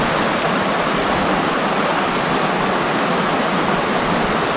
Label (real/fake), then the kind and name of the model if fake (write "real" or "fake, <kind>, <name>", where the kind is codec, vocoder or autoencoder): real